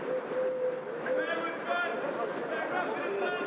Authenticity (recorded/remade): recorded